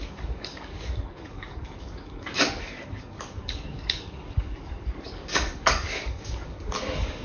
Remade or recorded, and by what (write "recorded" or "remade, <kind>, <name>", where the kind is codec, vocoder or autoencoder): remade, codec, DAC